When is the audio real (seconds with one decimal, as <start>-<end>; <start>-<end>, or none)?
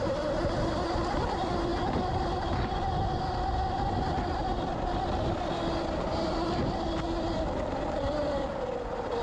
0.0-9.2